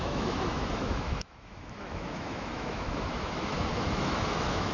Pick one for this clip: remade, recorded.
remade